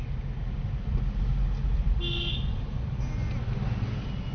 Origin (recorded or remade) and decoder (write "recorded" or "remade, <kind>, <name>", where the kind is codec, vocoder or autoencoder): recorded